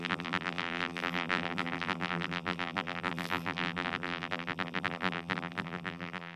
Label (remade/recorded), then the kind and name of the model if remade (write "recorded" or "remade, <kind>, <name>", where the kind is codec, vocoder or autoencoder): remade, vocoder, BigVGAN v2